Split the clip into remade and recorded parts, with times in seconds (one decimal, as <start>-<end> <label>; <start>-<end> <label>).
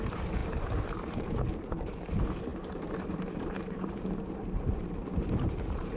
0.0-6.0 remade